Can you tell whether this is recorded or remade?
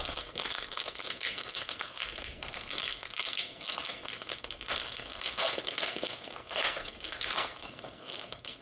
remade